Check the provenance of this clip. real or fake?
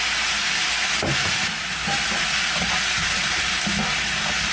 real